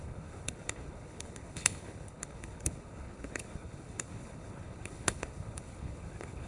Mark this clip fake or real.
fake